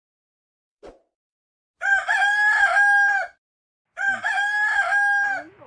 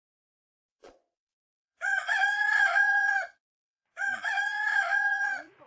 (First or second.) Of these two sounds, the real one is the first